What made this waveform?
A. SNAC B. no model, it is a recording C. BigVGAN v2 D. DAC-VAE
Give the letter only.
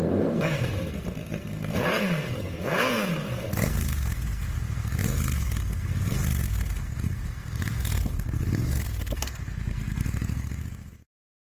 A